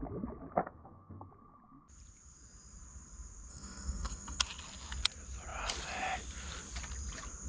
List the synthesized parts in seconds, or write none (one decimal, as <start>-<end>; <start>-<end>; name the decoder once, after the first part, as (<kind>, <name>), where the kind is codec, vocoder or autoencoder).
0.6-1.3 (codec, SNAC); 3.5-4.4